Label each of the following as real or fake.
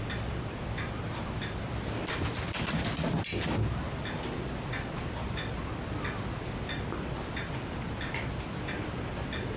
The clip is real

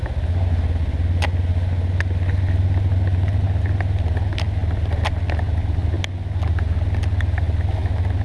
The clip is real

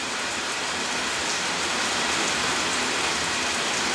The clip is fake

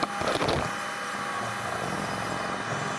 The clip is real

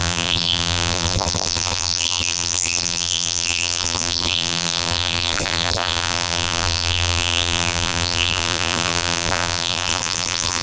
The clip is fake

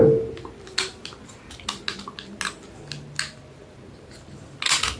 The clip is real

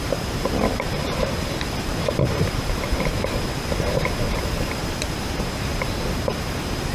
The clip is fake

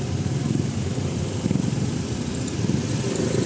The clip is fake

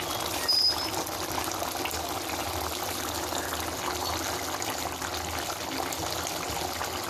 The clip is real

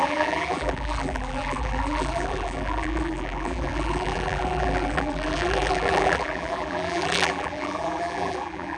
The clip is fake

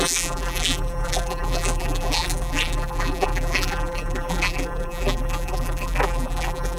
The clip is fake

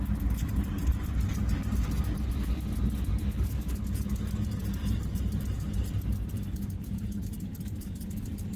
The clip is fake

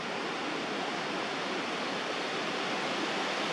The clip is real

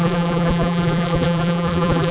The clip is fake